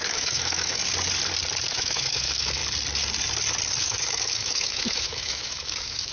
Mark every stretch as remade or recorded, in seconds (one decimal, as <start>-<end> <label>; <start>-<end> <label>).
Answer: 0.0-0.8 remade; 0.8-1.7 recorded; 1.7-2.6 remade; 2.6-3.8 recorded; 3.8-6.1 remade